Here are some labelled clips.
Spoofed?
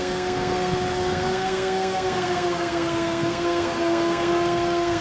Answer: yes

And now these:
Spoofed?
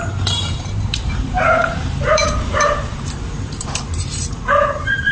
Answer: yes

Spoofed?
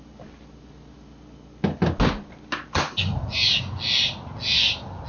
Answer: no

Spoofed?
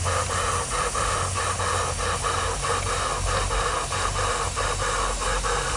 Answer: no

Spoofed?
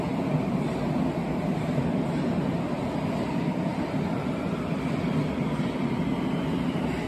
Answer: no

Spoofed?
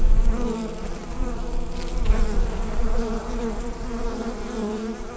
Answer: yes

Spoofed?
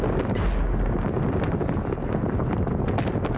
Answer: no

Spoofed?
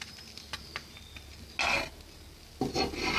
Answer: no